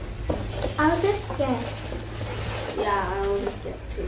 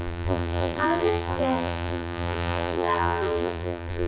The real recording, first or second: first